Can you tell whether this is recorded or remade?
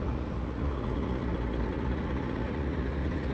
remade